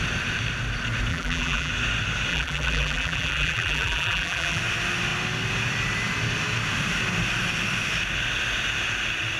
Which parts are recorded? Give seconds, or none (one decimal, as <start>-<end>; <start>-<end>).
0.0-1.1; 1.7-2.3; 4.6-9.4